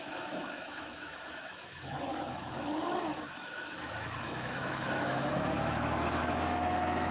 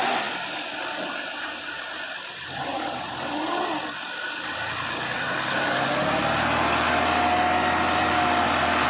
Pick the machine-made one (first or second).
first